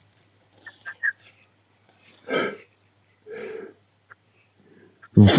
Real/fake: real